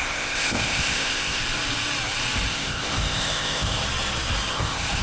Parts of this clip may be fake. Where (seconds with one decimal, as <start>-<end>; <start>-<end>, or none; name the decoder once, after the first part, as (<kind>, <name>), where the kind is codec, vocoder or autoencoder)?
0.0-1.4 (codec, ZipCodec); 2.5-3.8; 4.5-5.0